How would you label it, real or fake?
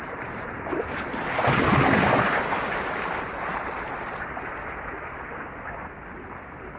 real